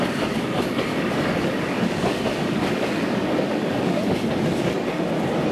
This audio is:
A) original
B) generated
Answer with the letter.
B